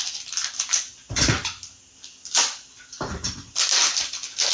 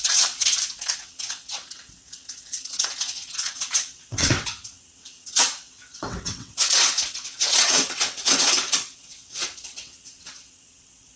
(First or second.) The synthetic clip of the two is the second